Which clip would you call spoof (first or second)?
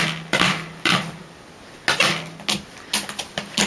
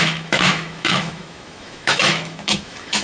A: second